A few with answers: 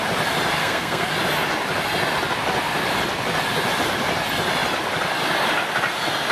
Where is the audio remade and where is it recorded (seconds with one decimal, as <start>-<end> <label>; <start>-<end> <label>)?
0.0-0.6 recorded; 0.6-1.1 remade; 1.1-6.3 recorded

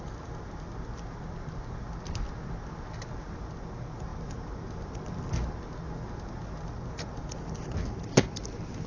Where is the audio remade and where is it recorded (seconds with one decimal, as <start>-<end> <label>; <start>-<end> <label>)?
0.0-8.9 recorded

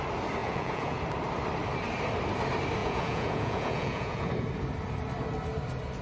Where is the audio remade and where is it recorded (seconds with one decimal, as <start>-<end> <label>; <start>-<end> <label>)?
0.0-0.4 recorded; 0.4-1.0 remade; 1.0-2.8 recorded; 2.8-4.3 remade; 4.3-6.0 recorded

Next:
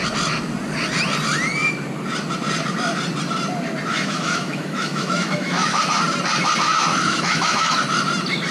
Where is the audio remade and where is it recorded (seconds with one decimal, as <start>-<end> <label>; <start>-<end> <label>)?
0.0-3.9 recorded; 3.9-5.8 remade; 5.8-6.9 recorded; 6.9-7.7 remade; 7.7-8.5 recorded